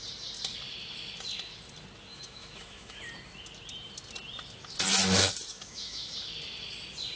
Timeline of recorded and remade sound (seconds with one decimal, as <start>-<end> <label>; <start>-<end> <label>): 0.0-2.1 recorded; 2.1-3.0 remade; 3.0-5.5 recorded; 5.5-6.1 remade; 6.1-7.2 recorded